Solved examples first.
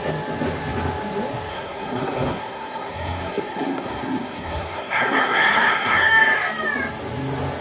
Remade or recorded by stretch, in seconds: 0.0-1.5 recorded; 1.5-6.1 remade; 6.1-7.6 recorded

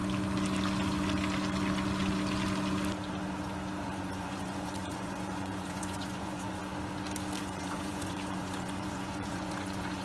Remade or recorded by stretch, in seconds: 0.0-3.8 recorded; 3.8-6.6 remade; 6.6-7.4 recorded; 7.4-10.0 remade

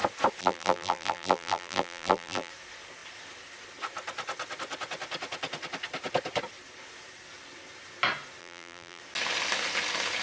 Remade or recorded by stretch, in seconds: 0.0-0.4 recorded; 0.4-2.5 remade; 2.5-8.4 recorded; 8.4-9.0 remade; 9.0-10.2 recorded

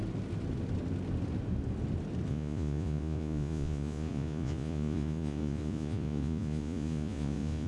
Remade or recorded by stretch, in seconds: 0.0-2.3 recorded; 2.3-7.7 remade

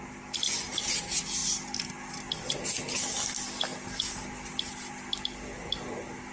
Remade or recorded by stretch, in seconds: 0.0-6.3 recorded

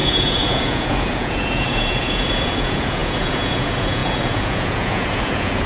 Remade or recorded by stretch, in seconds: 0.0-5.7 remade